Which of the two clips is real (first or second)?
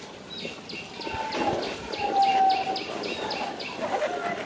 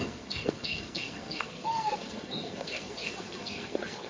first